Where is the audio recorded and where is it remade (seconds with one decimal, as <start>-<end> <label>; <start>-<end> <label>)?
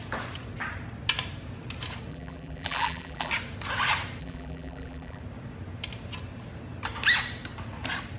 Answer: 0.0-2.1 recorded; 2.1-3.3 remade; 3.3-4.2 recorded; 4.2-5.2 remade; 5.2-8.2 recorded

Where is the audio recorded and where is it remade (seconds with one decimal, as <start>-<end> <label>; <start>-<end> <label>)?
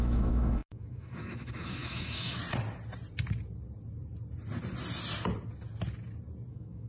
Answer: 0.0-2.4 remade; 2.4-6.5 recorded; 6.5-6.9 remade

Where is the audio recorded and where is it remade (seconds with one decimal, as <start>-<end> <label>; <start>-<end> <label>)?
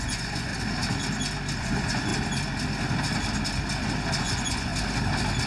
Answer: 0.0-0.5 remade; 0.5-1.6 recorded; 1.6-2.1 remade; 2.1-4.2 recorded; 4.2-4.7 remade; 4.7-5.5 recorded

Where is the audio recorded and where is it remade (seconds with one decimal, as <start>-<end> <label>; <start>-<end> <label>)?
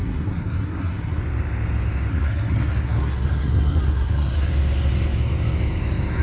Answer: 0.0-1.2 remade; 1.2-2.1 recorded; 2.1-4.5 remade; 4.5-6.2 recorded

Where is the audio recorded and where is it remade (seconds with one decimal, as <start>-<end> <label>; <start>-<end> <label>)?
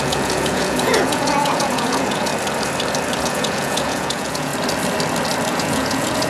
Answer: 0.0-2.3 remade; 2.3-3.2 recorded; 3.2-4.5 remade; 4.5-5.5 recorded; 5.5-6.3 remade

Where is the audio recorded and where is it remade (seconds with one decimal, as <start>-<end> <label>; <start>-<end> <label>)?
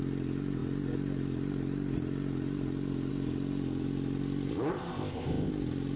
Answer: 0.0-4.7 recorded; 4.7-5.5 remade; 5.5-6.0 recorded